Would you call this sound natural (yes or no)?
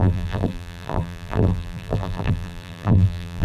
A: no